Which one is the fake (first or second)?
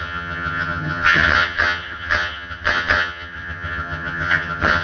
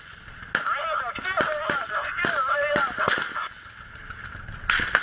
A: first